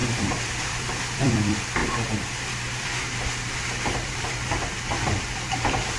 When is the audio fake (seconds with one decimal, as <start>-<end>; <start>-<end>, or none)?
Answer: 0.0-6.0